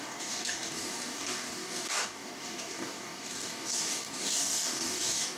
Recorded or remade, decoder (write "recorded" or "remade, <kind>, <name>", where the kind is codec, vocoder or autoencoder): remade, codec, DAC